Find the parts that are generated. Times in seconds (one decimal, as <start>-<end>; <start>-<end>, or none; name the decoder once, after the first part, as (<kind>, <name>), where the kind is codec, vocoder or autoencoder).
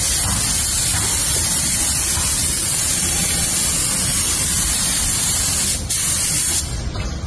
1.2-1.8 (vocoder, BigVGAN v2); 2.4-3.4; 4.1-5.5